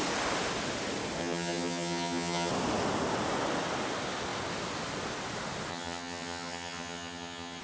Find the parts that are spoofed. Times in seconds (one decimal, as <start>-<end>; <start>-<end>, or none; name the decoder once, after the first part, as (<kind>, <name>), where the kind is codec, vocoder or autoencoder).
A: 1.2-2.5 (vocoder, HiFi-GAN); 5.7-7.6